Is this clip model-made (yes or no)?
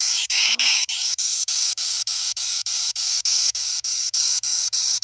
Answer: yes